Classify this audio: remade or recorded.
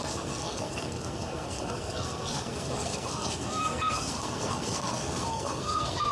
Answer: remade